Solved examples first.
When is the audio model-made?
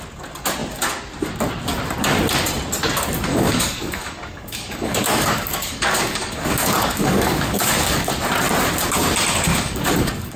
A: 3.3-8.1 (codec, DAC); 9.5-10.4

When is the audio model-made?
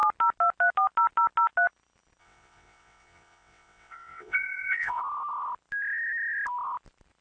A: 2.2-5.0 (vocoder, WaveNeXt)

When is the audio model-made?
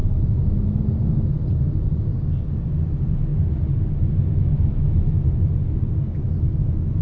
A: none